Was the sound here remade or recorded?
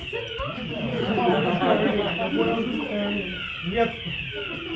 recorded